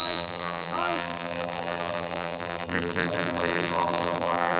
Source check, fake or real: fake